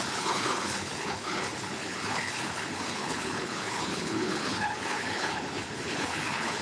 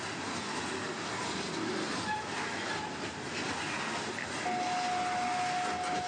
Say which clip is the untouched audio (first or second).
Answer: second